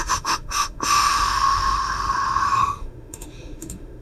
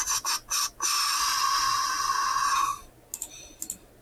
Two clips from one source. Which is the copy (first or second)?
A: first